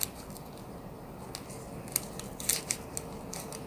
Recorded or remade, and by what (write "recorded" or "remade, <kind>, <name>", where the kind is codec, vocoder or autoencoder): recorded